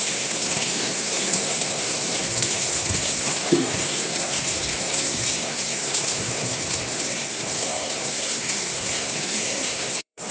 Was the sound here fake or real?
fake